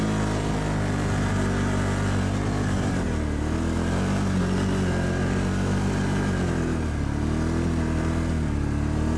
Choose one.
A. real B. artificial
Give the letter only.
A